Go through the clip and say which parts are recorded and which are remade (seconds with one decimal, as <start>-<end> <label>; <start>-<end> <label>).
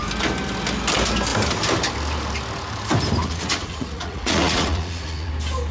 0.0-3.2 recorded; 3.2-5.3 remade; 5.3-5.7 recorded